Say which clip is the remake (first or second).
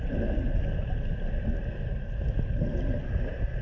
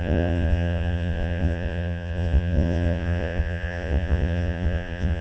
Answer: second